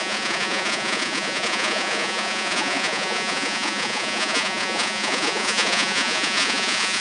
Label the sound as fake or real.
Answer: fake